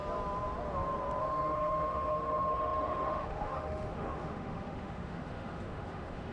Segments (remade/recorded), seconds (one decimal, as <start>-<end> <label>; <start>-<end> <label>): 0.0-1.2 recorded; 1.2-6.3 remade